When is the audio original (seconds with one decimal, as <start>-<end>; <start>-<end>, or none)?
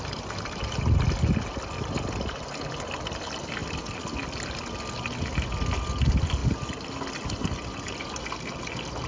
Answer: 0.0-9.1